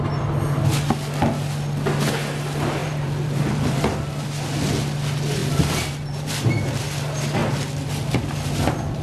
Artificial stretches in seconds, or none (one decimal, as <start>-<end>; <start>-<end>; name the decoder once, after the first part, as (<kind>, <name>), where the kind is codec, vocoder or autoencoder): 2.8-3.9 (vocoder, BigVGAN v2); 5.4-6.8